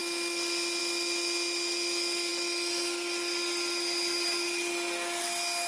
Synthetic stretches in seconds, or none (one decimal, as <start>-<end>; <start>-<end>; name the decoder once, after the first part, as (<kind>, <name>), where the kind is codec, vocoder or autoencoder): none